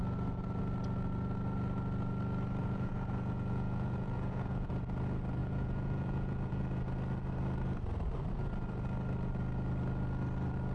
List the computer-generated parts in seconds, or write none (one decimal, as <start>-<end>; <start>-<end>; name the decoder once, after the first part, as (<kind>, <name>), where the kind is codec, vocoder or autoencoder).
2.6-4.7 (vocoder, Vocos); 5.4-6.6